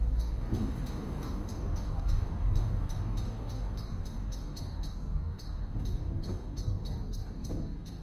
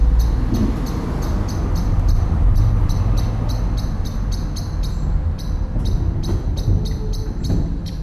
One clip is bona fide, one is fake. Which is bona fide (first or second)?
second